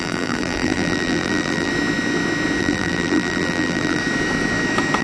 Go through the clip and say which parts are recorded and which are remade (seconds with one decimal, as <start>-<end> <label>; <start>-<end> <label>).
0.0-1.7 remade; 1.7-2.6 recorded; 2.6-4.0 remade; 4.0-5.0 recorded